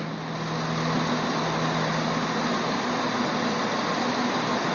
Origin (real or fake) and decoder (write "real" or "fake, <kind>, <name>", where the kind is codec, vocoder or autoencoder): real